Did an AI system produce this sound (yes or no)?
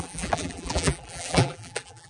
yes